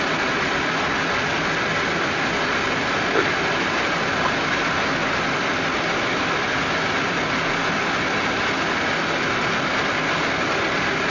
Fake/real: real